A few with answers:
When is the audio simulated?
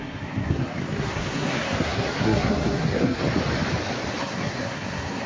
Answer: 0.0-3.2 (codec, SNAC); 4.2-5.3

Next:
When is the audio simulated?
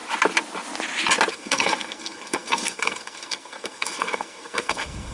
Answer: 1.3-5.1 (codec, SNAC)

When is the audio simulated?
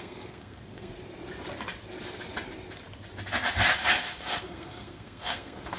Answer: 0.0-0.9 (codec, SNAC); 4.4-5.8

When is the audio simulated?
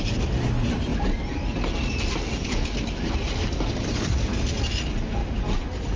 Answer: none